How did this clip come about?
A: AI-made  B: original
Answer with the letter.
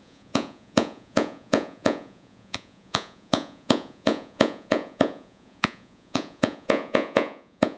A